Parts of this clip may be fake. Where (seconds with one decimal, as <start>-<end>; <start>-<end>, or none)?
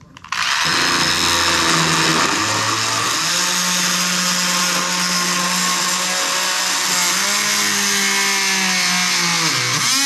none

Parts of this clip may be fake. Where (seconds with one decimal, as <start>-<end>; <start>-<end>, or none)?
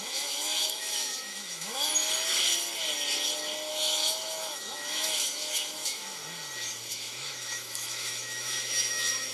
0.0-1.9; 3.7-6.2; 6.9-9.3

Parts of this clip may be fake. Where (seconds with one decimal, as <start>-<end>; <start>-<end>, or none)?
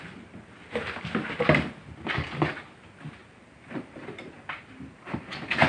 3.2-5.7